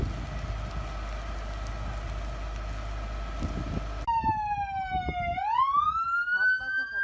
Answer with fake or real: real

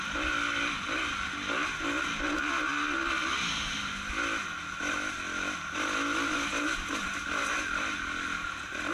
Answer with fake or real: real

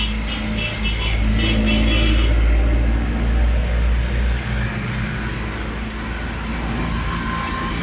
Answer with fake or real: real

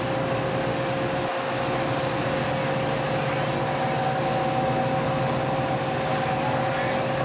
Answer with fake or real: real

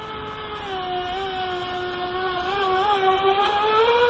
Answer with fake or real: real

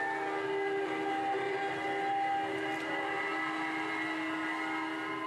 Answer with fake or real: real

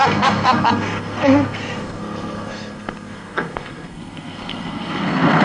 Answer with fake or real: fake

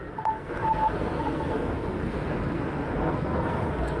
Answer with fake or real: fake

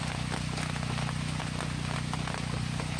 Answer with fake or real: real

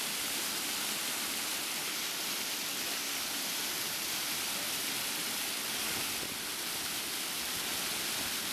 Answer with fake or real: real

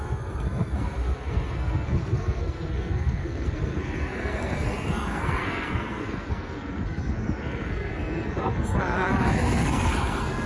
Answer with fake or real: fake